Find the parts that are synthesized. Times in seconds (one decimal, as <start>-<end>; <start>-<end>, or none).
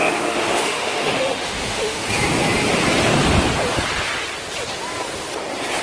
0.0-2.1